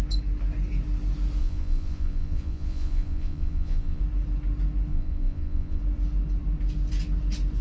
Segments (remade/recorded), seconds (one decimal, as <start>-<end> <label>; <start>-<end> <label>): 0.0-1.4 recorded; 1.4-4.0 remade; 4.0-4.9 recorded; 4.9-5.8 remade; 5.8-7.6 recorded